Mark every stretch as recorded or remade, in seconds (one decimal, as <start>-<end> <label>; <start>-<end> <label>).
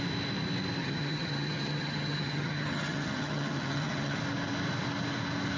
0.0-0.8 recorded; 0.8-4.2 remade; 4.2-5.6 recorded